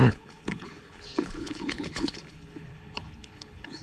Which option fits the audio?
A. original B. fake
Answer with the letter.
B